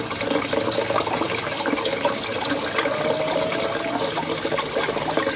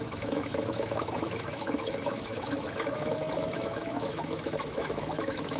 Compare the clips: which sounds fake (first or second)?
second